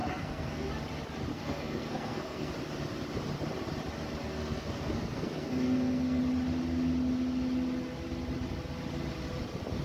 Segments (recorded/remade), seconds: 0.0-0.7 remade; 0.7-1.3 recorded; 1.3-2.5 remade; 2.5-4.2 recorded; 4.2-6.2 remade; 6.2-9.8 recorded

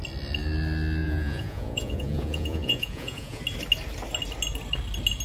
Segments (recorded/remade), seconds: 0.0-1.0 recorded; 1.0-3.4 remade; 3.4-5.2 recorded